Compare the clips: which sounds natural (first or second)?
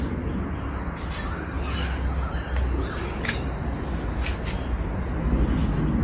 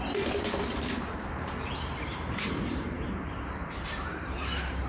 first